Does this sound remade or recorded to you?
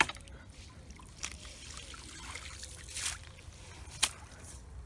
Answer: recorded